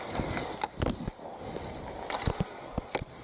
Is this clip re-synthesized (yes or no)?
no